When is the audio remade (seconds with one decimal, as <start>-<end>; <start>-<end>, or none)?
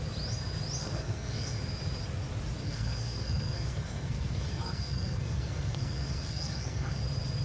0.8-1.6; 2.6-7.0